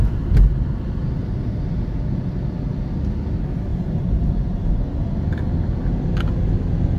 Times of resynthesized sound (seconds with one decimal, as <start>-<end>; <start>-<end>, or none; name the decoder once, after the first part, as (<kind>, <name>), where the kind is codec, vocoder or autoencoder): 3.7-4.8 (vocoder, BigVGAN v2)